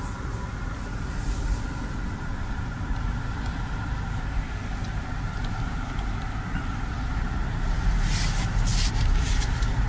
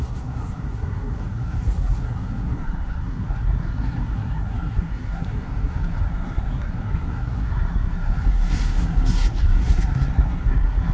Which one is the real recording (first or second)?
first